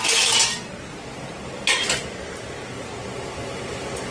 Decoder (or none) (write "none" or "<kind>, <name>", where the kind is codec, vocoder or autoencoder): none